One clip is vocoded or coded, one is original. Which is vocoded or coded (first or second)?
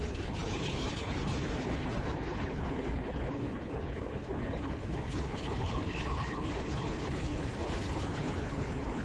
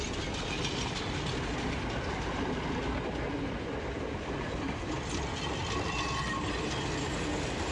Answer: first